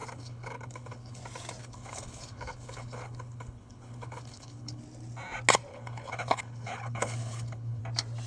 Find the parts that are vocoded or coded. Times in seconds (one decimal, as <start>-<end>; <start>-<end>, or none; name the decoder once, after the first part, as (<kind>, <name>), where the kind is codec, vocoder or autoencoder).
0.0-1.2 (codec, HILCodec); 1.6-4.8; 5.7-7.8